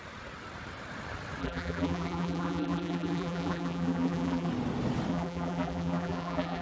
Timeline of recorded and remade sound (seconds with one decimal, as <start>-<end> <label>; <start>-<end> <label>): 0.0-1.4 recorded; 1.4-4.5 remade; 4.5-5.1 recorded; 5.1-6.6 remade